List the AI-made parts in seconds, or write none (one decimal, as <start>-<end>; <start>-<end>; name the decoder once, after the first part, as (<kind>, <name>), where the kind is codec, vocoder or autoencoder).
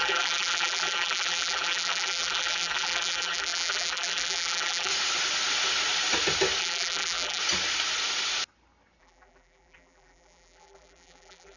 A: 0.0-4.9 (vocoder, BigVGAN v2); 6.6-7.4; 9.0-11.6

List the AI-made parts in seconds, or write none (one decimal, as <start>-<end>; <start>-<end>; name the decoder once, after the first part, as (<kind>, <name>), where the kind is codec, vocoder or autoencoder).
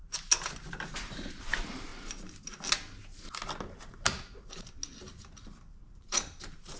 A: 0.7-1.9 (vocoder, BigVGAN v2); 6.0-6.8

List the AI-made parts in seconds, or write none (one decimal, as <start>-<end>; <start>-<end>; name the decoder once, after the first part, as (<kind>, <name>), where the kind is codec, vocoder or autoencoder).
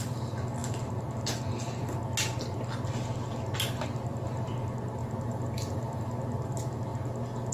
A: 5.0-6.0 (vocoder, BigVGAN v2)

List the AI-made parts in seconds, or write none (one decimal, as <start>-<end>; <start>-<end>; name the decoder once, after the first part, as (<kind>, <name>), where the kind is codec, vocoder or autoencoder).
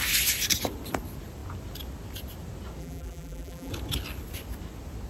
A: 2.8-3.7 (vocoder, BigVGAN v2)